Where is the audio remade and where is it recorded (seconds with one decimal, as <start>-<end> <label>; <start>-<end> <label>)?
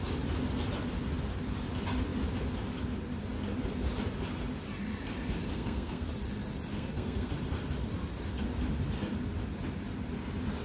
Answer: 0.0-5.5 recorded; 5.5-6.1 remade; 6.1-6.7 recorded; 6.7-7.3 remade; 7.3-10.6 recorded